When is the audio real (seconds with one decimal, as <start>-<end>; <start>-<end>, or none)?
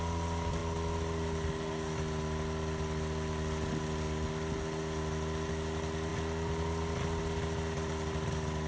0.0-8.7